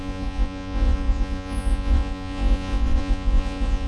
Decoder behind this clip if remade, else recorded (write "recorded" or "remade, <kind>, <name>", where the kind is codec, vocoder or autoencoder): remade, vocoder, Vocos